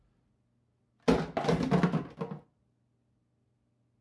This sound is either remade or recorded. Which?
recorded